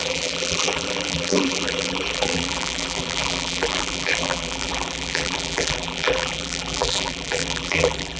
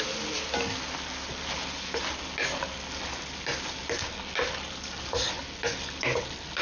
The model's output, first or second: first